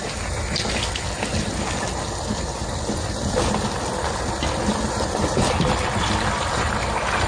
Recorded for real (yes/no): yes